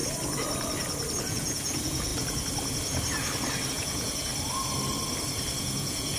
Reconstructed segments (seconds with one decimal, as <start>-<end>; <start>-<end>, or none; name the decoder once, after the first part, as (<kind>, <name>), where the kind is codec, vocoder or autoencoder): 1.2-2.1 (vocoder, Vocos); 3.7-4.3; 5.6-6.2